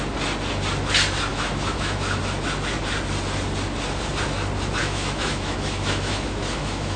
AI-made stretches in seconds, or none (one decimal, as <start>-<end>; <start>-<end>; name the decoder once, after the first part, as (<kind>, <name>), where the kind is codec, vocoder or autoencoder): 1.3-2.2 (autoencoder, DAC-VAE); 4.8-7.0